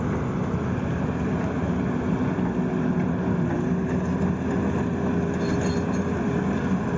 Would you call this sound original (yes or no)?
yes